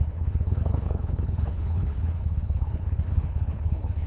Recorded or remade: remade